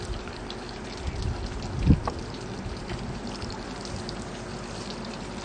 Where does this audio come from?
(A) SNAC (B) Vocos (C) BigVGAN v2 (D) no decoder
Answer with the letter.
D